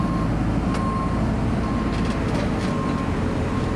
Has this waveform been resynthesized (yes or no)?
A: no